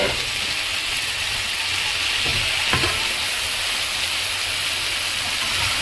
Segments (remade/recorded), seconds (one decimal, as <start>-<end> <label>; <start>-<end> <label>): 0.0-0.7 recorded; 0.7-1.6 remade; 1.6-5.8 recorded